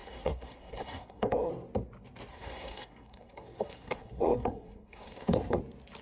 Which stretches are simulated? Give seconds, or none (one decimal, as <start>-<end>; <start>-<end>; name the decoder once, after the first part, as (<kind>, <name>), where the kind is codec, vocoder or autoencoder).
0.0-1.5 (codec, SNAC); 2.3-5.6